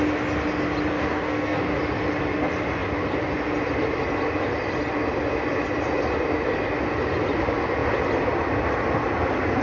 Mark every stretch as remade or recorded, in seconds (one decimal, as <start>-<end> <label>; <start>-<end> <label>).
0.0-0.9 recorded; 0.9-1.6 remade; 1.6-9.6 recorded